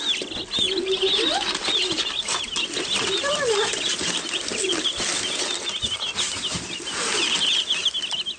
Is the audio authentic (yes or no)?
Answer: yes